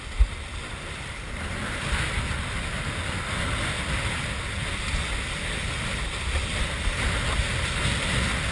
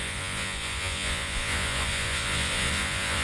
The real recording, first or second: first